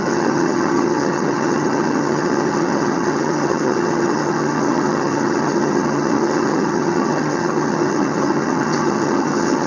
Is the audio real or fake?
fake